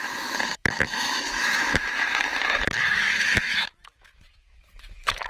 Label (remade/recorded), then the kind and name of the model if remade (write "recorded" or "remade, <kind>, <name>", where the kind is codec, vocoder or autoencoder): remade, autoencoder, DAC-VAE